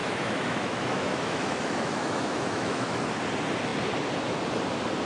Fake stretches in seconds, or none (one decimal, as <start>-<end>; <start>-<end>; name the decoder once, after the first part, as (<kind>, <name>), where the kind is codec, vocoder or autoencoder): 0.0-3.0 (autoencoder, DAC-VAE)

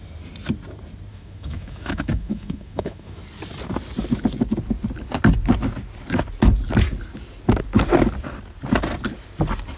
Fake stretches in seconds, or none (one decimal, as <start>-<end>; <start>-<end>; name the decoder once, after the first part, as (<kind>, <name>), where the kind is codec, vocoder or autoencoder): 1.1-3.2 (autoencoder, DAC-VAE)

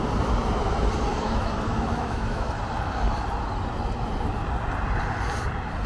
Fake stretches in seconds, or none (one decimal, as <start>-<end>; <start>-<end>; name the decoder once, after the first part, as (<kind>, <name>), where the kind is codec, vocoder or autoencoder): 1.1-2.5 (autoencoder, DAC-VAE)

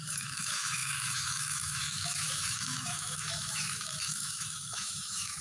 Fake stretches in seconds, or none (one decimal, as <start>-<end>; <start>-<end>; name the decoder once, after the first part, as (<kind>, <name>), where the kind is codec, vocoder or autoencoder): 0.0-5.4 (autoencoder, DAC-VAE)

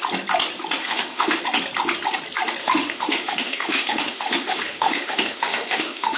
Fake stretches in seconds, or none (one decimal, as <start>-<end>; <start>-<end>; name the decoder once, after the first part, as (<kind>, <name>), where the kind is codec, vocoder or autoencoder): 0.8-1.4 (autoencoder, DAC-VAE); 2.6-6.2

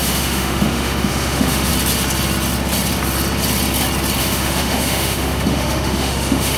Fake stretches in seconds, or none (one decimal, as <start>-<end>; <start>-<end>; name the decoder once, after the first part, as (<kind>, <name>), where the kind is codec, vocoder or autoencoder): 0.0-1.7 (autoencoder, DAC-VAE); 4.2-6.6

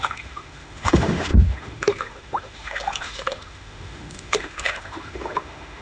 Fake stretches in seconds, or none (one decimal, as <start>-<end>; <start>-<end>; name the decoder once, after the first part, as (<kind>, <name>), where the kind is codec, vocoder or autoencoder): 0.0-5.8 (autoencoder, DAC-VAE)

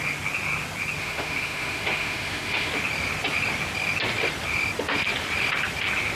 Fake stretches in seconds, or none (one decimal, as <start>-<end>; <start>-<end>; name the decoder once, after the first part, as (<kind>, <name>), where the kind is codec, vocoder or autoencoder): 1.0-2.7 (autoencoder, DAC-VAE)